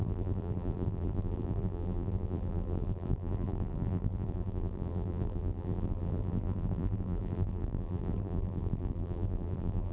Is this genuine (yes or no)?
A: no